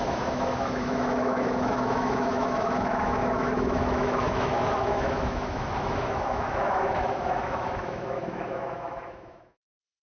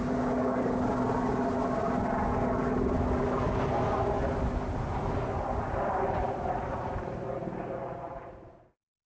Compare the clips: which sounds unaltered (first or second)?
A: second